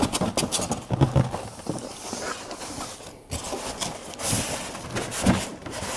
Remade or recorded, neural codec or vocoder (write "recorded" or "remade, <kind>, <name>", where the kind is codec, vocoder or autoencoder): recorded